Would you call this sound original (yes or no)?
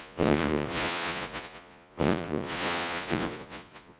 no